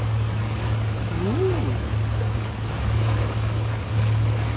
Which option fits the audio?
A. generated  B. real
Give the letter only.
A